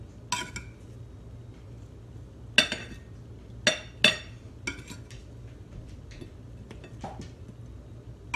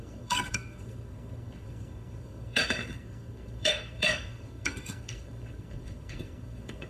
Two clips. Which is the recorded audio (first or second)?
first